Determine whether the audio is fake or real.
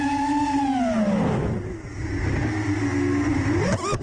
real